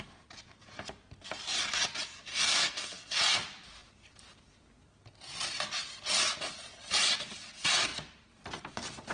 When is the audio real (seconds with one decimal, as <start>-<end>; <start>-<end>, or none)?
0.0-2.3; 3.2-9.1